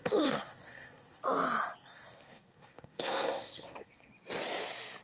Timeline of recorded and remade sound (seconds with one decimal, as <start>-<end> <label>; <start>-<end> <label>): 0.0-1.2 remade; 1.2-1.8 recorded; 1.8-4.1 remade; 4.1-5.0 recorded

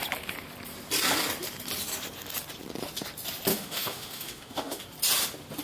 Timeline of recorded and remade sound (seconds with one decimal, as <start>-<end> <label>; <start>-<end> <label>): 0.0-3.5 recorded; 3.5-4.8 remade; 4.8-5.6 recorded

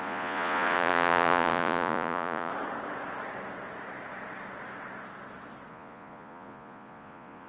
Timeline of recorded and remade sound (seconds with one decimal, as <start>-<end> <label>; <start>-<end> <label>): 0.0-2.5 remade; 2.5-5.7 recorded; 5.7-7.5 remade